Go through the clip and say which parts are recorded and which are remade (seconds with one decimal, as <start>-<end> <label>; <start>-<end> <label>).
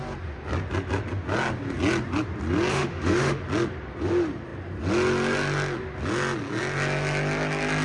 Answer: 0.0-2.7 recorded; 2.7-3.4 remade; 3.4-7.8 recorded